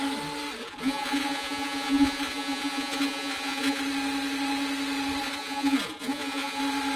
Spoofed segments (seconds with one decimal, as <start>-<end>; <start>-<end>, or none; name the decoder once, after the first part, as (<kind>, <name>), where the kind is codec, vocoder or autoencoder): 0.6-3.8 (vocoder, Vocos); 5.2-6.6

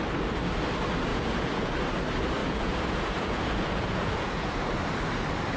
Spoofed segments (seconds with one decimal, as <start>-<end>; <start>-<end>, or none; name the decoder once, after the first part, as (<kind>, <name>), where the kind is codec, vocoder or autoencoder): 1.1-1.7 (vocoder, Vocos); 2.4-4.6

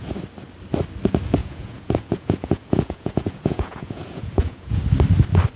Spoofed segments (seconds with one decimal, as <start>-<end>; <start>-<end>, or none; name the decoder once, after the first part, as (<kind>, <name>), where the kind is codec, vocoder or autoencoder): 1.4-4.8 (vocoder, Vocos)

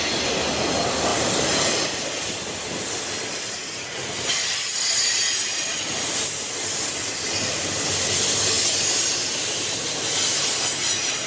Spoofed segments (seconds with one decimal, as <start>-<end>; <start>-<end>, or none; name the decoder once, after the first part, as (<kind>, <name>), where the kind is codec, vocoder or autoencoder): none

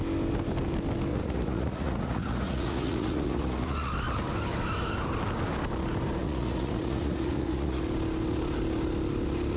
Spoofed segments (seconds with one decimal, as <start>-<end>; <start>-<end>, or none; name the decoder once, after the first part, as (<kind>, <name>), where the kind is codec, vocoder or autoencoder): 1.1-3.9 (vocoder, Vocos); 6.2-7.8

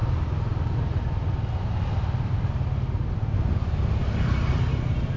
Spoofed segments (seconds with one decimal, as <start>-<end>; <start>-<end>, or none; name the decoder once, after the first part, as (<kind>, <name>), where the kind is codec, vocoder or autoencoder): none

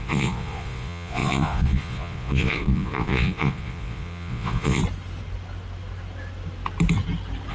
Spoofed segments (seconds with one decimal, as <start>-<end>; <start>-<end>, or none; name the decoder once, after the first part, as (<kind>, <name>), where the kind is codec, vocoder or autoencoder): 0.0-4.8 (vocoder, Vocos)

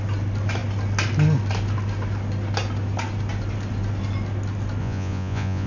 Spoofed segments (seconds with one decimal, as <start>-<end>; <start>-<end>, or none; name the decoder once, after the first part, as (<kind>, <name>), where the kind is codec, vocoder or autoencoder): 4.8-5.7 (vocoder, Vocos)